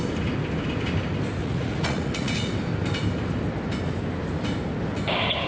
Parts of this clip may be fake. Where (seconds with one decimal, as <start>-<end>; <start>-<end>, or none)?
1.4-2.5